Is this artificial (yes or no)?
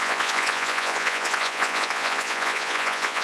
yes